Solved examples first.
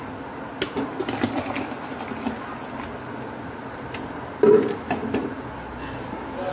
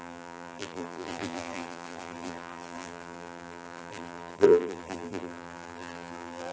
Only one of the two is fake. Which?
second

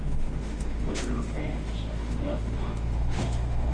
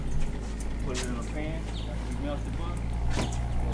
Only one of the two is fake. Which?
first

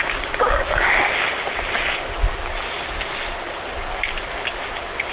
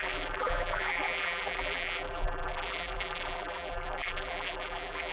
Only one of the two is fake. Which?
second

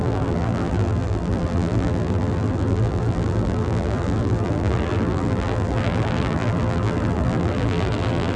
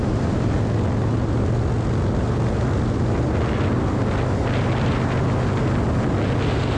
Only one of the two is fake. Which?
first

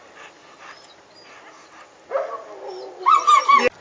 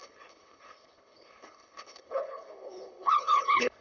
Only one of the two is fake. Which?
second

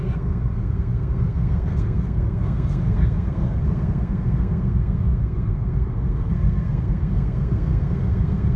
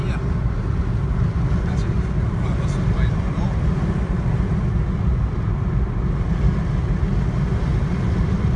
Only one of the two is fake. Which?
first